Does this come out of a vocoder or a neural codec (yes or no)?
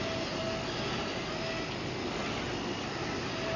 no